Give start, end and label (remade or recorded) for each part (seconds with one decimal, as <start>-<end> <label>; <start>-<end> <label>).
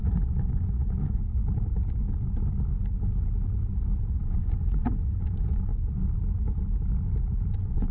0.0-1.2 remade; 1.2-4.2 recorded; 4.2-5.7 remade; 5.7-7.5 recorded; 7.5-7.9 remade